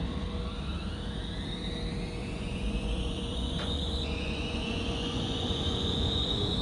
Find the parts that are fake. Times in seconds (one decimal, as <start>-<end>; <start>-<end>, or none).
2.2-6.6